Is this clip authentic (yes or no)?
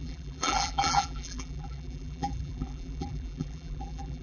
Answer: no